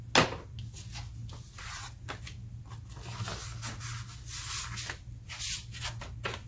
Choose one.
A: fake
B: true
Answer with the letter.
B